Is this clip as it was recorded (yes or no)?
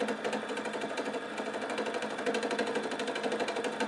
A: yes